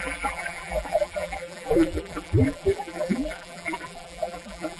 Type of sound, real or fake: fake